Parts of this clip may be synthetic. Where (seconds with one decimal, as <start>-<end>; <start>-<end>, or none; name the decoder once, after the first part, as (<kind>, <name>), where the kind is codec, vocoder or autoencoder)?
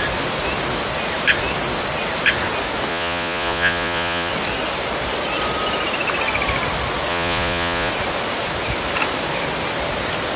2.9-4.3 (vocoder, Vocos); 7.1-7.9